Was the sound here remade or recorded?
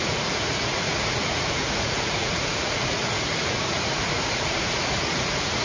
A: remade